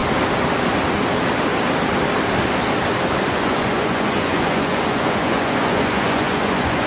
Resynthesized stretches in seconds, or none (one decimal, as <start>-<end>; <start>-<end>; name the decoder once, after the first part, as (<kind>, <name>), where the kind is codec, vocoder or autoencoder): 3.3-6.9 (vocoder, Vocos)